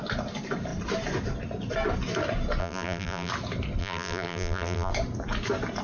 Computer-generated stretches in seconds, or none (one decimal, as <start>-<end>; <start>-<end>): 2.6-3.3; 3.8-4.9